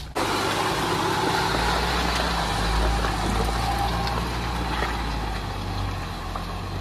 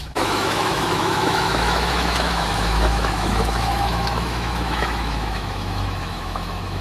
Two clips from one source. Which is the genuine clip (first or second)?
first